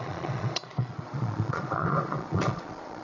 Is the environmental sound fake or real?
fake